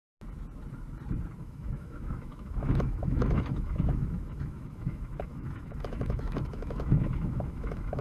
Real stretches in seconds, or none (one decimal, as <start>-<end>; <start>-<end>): 0.0-1.4